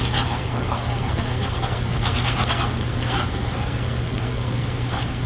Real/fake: fake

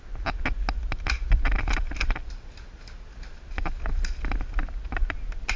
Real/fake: real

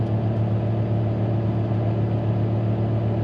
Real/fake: real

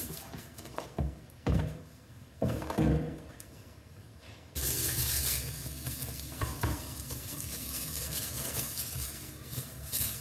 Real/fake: fake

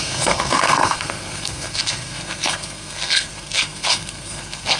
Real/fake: fake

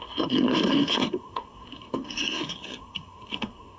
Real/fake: fake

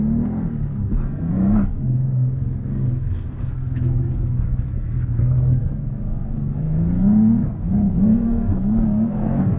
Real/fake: fake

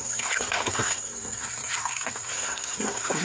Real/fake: fake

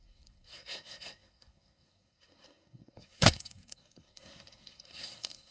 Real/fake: fake